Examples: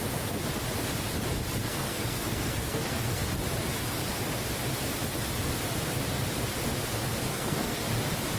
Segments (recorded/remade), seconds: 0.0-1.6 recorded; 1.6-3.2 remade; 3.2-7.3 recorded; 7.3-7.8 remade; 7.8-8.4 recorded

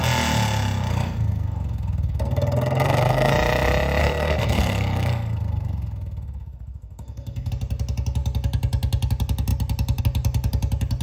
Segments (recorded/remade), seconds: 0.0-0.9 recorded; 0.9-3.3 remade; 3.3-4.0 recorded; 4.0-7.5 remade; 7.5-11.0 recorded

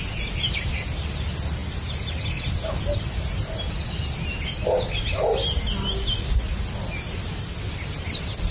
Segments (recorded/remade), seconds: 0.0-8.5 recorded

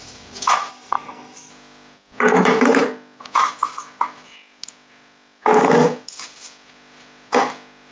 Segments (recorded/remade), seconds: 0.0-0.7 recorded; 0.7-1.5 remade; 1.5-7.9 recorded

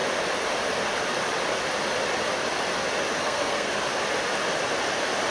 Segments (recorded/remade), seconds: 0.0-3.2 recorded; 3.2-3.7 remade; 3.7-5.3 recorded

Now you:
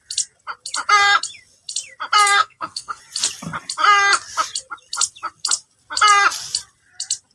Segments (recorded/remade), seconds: 0.0-2.2 recorded; 2.2-3.0 remade; 3.0-7.3 recorded

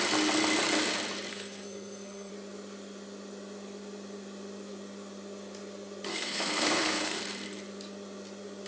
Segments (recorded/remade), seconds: 0.0-1.3 recorded; 1.3-2.3 remade; 2.3-6.1 recorded; 6.1-7.2 remade; 7.2-8.7 recorded

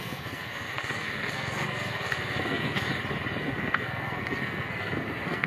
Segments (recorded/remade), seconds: 0.0-2.9 remade; 2.9-3.4 recorded; 3.4-5.5 remade